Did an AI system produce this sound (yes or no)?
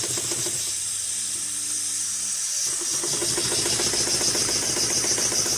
no